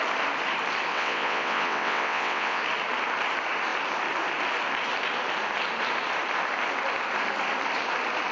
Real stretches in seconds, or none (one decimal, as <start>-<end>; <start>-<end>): 0.0-0.9; 2.6-8.3